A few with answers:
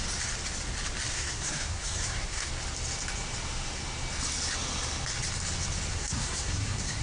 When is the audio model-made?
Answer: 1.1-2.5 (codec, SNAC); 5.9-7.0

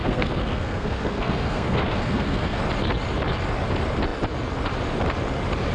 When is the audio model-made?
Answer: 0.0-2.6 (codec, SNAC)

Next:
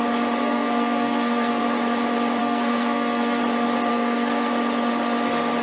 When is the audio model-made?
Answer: 0.4-1.6 (codec, SNAC); 2.4-3.4; 3.9-4.5

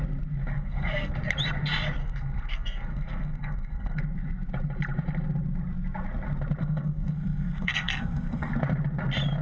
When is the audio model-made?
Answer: 0.5-1.1 (codec, SNAC); 2.0-4.0; 6.6-8.5

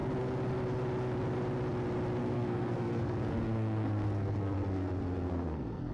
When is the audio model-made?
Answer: 2.2-5.9 (codec, SNAC)